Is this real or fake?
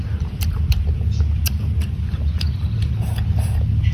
real